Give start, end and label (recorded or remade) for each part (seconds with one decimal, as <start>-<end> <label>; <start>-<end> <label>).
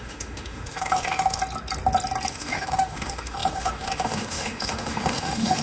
0.0-1.4 remade; 1.4-2.3 recorded; 2.3-5.6 remade